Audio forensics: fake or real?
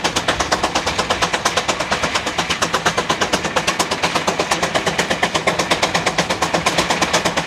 real